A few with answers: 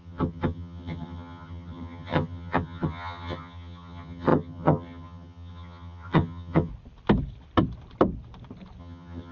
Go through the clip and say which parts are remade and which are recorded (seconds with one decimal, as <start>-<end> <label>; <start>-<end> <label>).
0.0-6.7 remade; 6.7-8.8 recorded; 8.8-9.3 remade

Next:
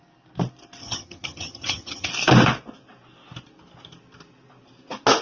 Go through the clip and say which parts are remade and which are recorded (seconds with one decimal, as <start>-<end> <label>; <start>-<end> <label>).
0.0-0.8 recorded; 0.8-2.1 remade; 2.1-5.2 recorded

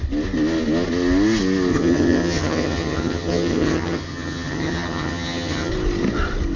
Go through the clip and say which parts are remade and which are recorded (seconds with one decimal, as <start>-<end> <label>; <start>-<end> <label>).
0.0-1.7 recorded; 1.7-5.7 remade; 5.7-6.6 recorded

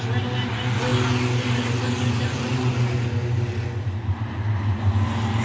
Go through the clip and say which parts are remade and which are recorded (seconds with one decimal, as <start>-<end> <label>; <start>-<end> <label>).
0.0-5.4 recorded

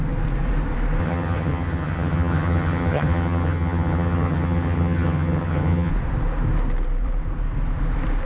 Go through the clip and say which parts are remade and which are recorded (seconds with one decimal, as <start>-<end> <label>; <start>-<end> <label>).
0.0-1.0 recorded; 1.0-5.9 remade; 5.9-8.2 recorded

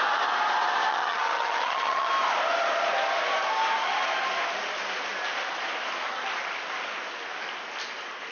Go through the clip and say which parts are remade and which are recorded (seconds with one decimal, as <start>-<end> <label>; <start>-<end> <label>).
0.0-0.9 recorded; 0.9-2.1 remade; 2.1-8.3 recorded